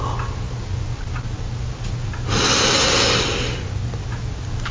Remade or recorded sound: recorded